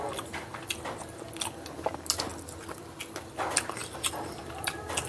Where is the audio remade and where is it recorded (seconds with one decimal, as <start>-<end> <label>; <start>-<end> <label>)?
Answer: 0.0-3.8 recorded; 3.8-4.4 remade; 4.4-5.1 recorded